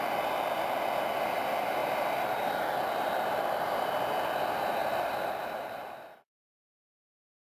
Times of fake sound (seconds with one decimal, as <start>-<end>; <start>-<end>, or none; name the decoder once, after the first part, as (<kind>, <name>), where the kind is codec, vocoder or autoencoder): 1.8-2.5 (vocoder, BigVGAN v2); 4.8-7.5